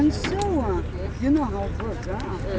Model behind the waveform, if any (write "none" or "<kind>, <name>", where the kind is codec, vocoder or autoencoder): none